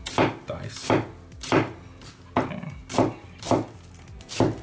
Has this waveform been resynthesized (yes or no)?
no